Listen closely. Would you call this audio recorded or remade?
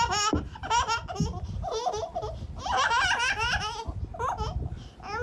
recorded